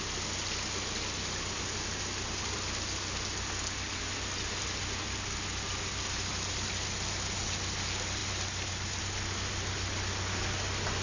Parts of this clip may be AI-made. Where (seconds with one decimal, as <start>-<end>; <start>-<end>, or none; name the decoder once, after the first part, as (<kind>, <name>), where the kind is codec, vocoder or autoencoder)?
none